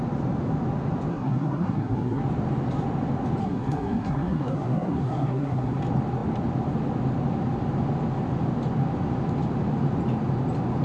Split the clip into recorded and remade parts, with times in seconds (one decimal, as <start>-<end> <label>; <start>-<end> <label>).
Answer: 0.0-1.1 recorded; 1.1-2.2 remade; 2.2-3.4 recorded; 3.4-5.8 remade; 5.8-10.8 recorded